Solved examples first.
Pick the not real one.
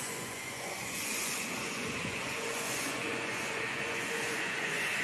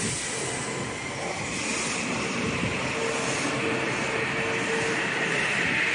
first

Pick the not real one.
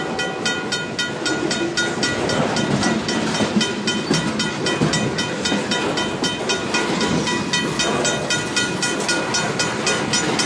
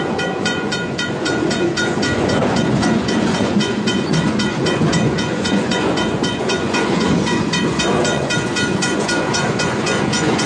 second